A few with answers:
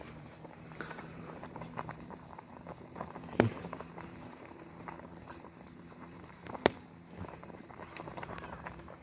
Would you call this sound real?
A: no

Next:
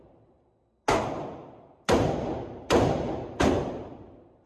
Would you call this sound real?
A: yes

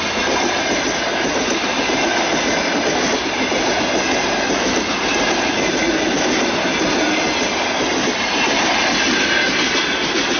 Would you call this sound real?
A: yes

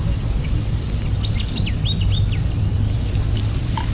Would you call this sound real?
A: yes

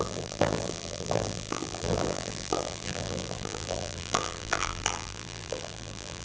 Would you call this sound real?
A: no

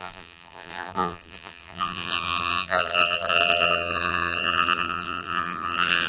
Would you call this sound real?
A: no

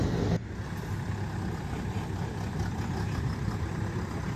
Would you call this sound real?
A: yes